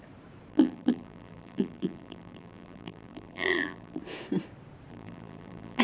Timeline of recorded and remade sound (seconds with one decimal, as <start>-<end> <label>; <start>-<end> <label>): 0.0-0.5 recorded; 0.5-4.0 remade; 4.0-4.9 recorded; 4.9-5.8 remade